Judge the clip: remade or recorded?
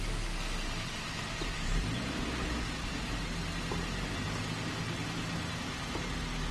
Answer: recorded